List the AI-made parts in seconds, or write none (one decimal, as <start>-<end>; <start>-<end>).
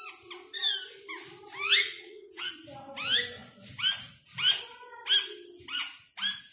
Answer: 1.8-2.5